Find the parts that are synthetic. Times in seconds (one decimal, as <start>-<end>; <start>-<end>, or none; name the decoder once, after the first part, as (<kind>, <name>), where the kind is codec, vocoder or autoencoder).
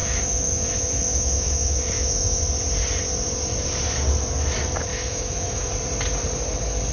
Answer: 0.0-2.4 (autoencoder, DAC-VAE); 4.9-5.7